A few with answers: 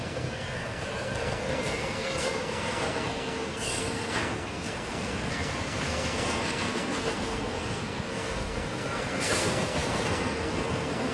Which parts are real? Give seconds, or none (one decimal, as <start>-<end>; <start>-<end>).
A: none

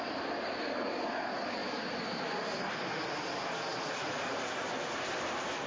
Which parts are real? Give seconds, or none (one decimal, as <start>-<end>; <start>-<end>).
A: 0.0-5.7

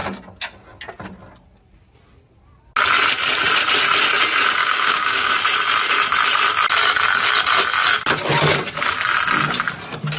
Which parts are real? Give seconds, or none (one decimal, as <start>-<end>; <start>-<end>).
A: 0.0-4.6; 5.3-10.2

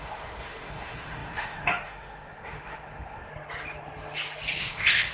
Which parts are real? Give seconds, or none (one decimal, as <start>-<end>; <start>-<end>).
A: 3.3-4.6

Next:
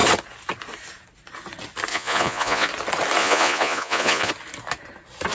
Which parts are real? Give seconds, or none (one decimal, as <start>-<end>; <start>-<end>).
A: 0.0-1.9; 2.7-3.2; 4.3-5.3

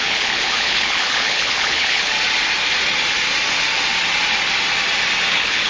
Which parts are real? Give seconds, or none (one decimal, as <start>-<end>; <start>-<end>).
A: 2.1-5.3

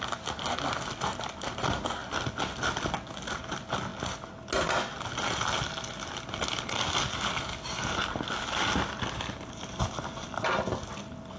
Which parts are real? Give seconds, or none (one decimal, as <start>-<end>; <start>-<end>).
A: 0.0-11.4